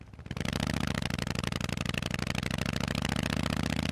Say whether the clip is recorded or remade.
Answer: recorded